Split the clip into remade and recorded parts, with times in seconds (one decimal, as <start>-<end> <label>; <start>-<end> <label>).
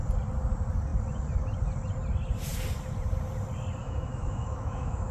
0.0-3.8 recorded; 3.8-5.1 remade